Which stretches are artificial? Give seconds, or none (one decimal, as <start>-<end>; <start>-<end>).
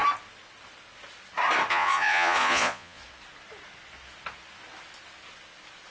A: 1.7-3.0